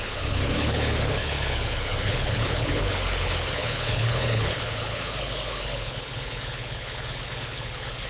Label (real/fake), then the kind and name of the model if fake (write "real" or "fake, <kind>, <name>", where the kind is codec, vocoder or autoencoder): fake, codec, HILCodec